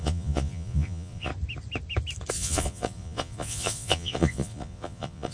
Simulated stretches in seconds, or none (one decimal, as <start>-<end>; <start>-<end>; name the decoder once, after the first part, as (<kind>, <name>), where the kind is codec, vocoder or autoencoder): 0.0-1.3 (vocoder, Vocos); 2.3-5.3

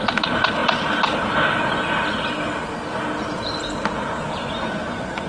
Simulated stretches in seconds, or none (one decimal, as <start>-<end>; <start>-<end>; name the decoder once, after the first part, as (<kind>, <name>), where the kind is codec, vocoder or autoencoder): 4.4-5.3 (vocoder, Vocos)

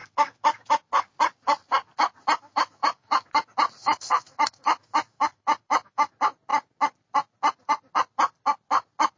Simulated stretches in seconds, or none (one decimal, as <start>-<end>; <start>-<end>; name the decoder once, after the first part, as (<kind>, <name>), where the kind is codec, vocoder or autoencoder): 0.0-0.7 (autoencoder, DAC-VAE); 2.4-3.3; 3.8-6.1

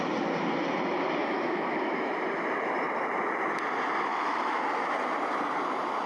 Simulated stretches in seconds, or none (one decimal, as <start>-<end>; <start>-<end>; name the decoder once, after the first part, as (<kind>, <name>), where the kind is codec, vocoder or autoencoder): 1.2-2.1 (autoencoder, DAC-VAE); 4.1-4.6

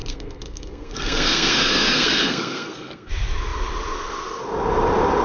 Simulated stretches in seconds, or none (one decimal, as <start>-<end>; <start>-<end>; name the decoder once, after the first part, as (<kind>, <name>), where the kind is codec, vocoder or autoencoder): 0.0-3.1 (codec, SNAC)